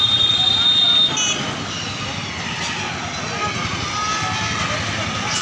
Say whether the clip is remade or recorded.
recorded